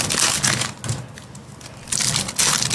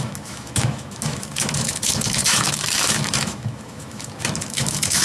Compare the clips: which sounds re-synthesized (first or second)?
second